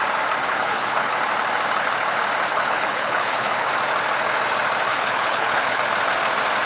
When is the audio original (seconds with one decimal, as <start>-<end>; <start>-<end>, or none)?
0.0-0.4; 1.1-2.5; 3.7-4.9; 5.8-6.7